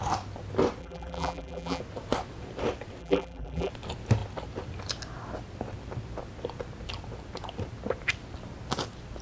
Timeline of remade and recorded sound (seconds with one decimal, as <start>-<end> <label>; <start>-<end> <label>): 0.0-0.8 recorded; 0.8-1.8 remade; 1.8-3.0 recorded; 3.0-3.7 remade; 3.7-9.2 recorded